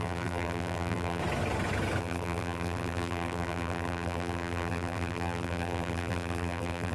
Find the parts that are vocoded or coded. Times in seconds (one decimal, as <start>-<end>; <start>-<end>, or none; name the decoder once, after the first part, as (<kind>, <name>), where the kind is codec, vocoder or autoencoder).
0.0-1.2 (vocoder, BigVGAN v2); 2.0-6.9